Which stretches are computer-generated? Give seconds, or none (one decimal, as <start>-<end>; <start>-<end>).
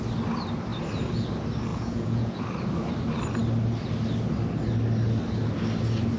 1.7-2.4